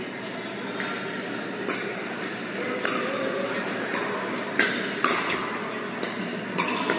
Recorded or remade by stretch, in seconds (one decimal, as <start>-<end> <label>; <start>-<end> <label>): 0.0-1.9 recorded; 1.9-5.1 remade; 5.1-7.0 recorded